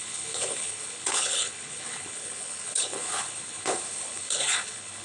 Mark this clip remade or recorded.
remade